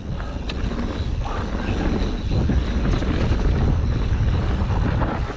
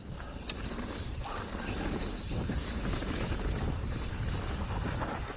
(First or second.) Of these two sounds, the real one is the first